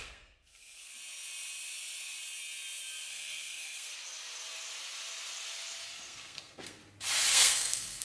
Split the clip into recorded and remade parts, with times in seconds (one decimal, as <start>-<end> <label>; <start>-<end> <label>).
0.0-0.9 remade; 0.9-3.1 recorded; 3.1-3.9 remade; 3.9-5.9 recorded; 5.9-6.8 remade; 6.8-7.3 recorded; 7.3-8.0 remade

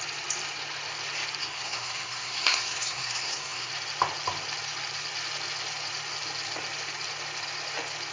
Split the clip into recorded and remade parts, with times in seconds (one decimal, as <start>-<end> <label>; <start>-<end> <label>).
0.0-1.4 recorded; 1.4-3.7 remade; 3.7-8.1 recorded